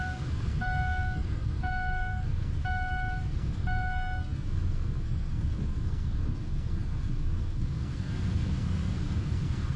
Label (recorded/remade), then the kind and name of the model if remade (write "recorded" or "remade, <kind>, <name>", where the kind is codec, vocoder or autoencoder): remade, codec, SNAC